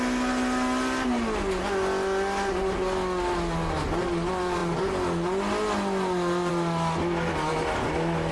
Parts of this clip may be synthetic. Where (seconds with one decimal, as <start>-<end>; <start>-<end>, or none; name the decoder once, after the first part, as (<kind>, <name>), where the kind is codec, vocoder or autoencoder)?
none